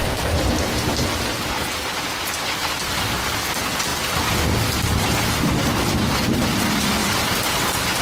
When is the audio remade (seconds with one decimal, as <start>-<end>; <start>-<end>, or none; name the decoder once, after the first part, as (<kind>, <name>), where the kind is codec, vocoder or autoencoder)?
7.0-7.6 (vocoder, BigVGAN v2)